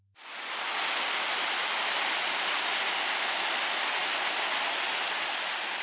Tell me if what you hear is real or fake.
real